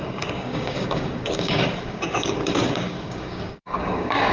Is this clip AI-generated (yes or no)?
yes